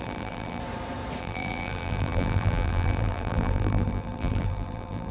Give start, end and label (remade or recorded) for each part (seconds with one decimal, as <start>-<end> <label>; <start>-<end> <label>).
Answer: 0.0-0.6 remade; 0.6-1.2 recorded; 1.2-5.1 remade